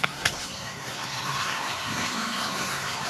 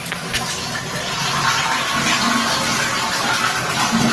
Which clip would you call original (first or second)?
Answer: second